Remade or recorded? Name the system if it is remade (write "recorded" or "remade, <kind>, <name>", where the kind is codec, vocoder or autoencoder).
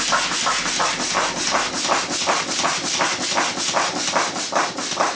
recorded